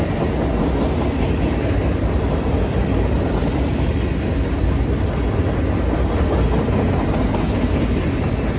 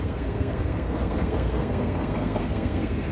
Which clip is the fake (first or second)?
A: second